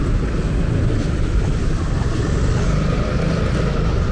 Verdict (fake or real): real